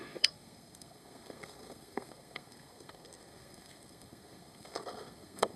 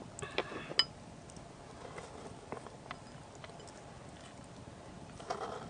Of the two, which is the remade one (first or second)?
first